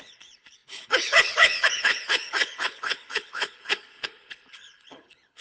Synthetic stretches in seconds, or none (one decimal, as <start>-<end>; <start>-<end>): 0.0-5.4